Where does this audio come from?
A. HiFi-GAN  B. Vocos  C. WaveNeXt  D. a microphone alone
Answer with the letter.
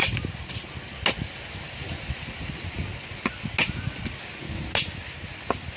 D